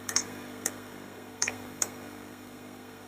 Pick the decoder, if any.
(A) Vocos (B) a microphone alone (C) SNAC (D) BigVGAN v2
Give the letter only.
C